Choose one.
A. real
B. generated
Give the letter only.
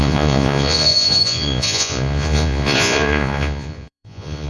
B